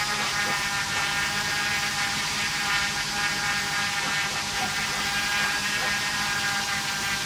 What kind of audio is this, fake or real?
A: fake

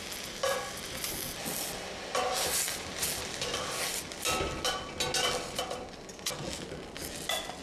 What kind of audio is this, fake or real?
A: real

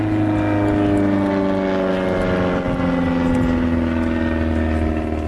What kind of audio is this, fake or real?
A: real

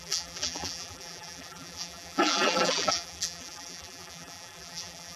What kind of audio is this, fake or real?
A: fake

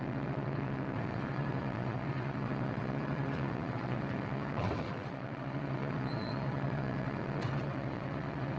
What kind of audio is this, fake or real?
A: fake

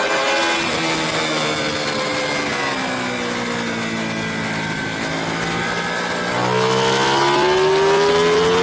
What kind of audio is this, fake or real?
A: real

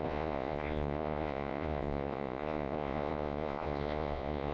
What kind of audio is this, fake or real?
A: fake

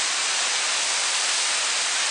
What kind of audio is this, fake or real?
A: real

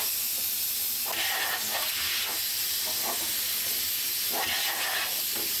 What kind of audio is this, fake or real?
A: real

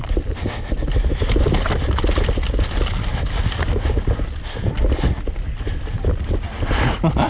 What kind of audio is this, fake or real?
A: real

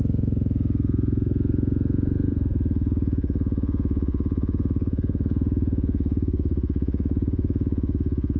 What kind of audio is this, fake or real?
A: fake